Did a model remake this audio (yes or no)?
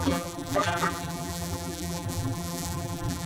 yes